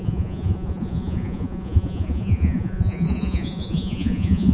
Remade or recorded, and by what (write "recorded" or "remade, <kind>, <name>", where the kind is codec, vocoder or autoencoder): remade, vocoder, Vocos